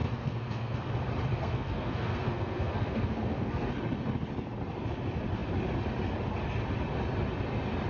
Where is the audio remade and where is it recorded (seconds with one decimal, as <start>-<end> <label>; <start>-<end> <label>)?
0.0-0.9 remade; 0.9-1.3 recorded; 1.3-3.7 remade; 3.7-7.9 recorded